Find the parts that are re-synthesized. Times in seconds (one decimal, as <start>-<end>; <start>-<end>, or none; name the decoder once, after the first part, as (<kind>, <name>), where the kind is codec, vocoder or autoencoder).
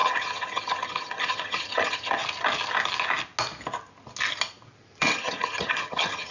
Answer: 0.0-2.2 (vocoder, HiFi-GAN); 5.0-6.3